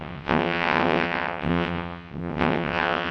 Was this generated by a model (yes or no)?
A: yes